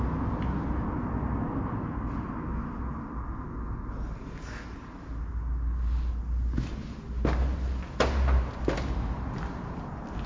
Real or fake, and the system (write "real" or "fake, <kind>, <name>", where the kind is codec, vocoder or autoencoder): real